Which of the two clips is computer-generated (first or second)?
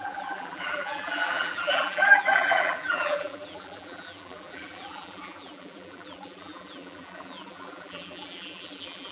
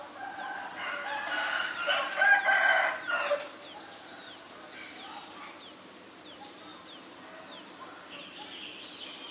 first